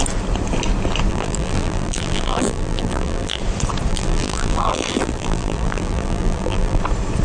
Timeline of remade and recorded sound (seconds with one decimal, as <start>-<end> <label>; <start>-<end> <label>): 0.0-1.1 recorded; 1.1-3.4 remade; 3.4-3.9 recorded; 3.9-6.8 remade; 6.8-7.2 recorded